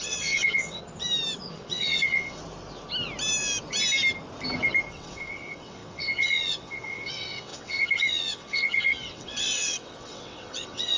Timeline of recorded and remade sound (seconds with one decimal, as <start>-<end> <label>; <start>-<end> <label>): 0.0-0.8 remade; 0.8-1.5 recorded; 1.5-2.4 remade; 2.4-4.9 recorded; 4.9-11.0 remade